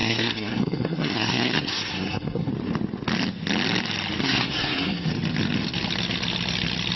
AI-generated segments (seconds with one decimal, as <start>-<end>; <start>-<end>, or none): 0.0-2.5; 4.2-5.1